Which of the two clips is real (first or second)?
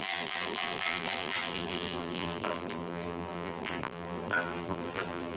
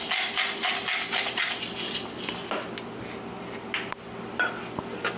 second